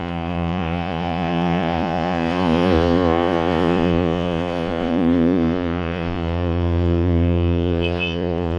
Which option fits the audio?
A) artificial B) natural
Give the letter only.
A